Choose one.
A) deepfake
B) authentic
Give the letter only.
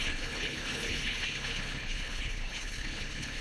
A